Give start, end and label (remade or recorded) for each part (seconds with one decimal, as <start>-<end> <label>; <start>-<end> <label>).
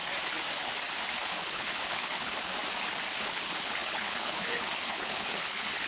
0.0-1.2 recorded; 1.2-2.5 remade; 2.5-3.1 recorded; 3.1-5.9 remade